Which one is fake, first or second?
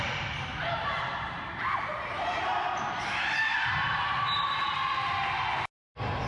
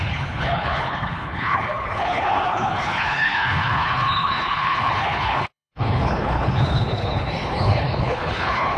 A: second